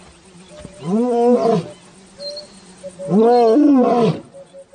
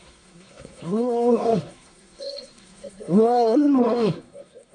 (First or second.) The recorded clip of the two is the first